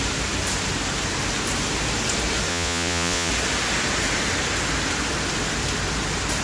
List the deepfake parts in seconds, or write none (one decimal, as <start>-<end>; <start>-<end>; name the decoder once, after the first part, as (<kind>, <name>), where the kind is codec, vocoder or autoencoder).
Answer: 2.5-3.3 (vocoder, Vocos)